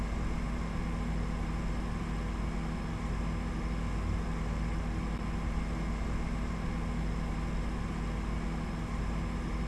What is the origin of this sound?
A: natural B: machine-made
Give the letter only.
A